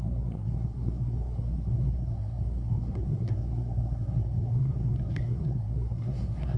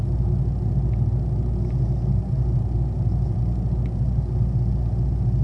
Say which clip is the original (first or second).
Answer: second